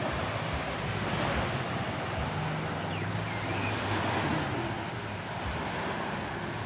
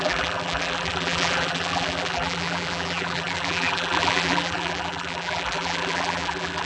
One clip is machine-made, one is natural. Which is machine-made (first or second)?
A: second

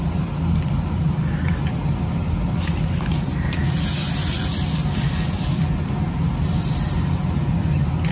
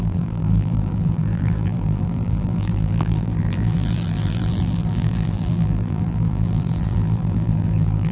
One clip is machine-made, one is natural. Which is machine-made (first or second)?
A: second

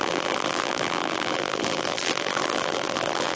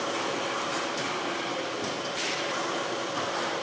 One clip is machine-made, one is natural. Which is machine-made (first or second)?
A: first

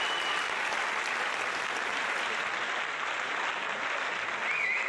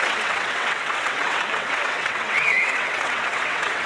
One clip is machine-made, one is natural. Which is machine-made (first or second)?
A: second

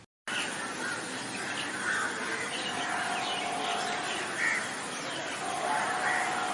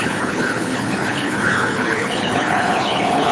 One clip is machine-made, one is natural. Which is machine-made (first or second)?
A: second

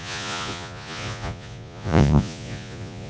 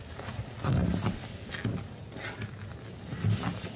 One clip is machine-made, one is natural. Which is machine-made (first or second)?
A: first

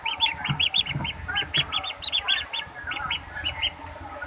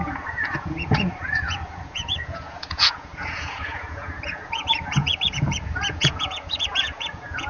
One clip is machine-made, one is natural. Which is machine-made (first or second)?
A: second